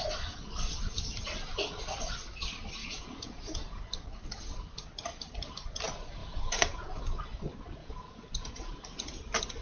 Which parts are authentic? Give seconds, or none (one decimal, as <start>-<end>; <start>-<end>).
0.0-2.8; 3.8-6.2; 7.0-7.8; 8.7-9.6